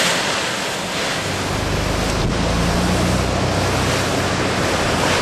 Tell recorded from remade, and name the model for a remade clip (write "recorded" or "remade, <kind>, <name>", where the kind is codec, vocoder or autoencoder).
recorded